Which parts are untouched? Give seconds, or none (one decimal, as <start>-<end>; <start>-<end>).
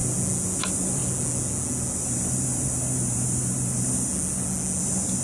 0.0-0.6; 1.0-1.9; 4.1-4.8